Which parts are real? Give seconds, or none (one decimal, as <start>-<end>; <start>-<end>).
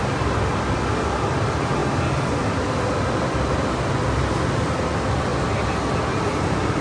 0.0-6.8